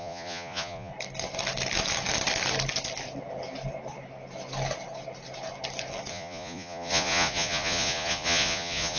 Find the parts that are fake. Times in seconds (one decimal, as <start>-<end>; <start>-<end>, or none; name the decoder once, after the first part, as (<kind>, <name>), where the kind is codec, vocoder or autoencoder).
0.0-0.9 (vocoder, Vocos); 6.1-9.0